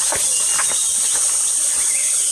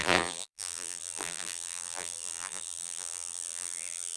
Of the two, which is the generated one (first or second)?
second